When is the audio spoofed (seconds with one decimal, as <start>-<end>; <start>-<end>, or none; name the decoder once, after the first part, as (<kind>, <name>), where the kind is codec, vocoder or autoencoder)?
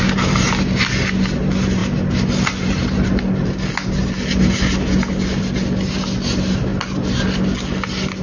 none